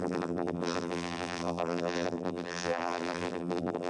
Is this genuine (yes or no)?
no